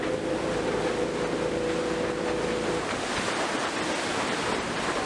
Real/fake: real